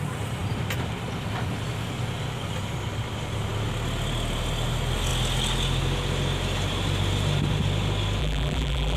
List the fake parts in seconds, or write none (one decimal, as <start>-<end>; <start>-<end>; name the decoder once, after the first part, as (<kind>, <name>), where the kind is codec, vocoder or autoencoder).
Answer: 8.2-9.0 (vocoder, BigVGAN v2)